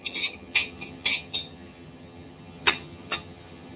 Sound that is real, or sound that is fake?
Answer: fake